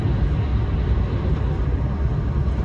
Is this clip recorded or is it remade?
recorded